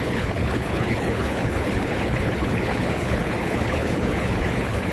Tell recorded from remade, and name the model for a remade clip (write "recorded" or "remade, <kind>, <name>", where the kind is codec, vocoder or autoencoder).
remade, codec, HILCodec